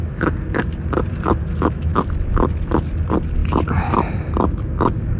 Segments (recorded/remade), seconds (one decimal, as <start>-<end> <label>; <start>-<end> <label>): 0.0-1.4 recorded; 1.4-2.0 remade; 2.0-5.2 recorded